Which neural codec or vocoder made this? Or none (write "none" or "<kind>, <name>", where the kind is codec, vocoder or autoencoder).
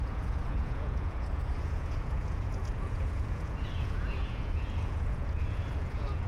vocoder, Vocos